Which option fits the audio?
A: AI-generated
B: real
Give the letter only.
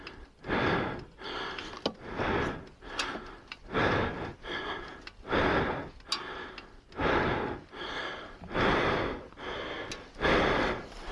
B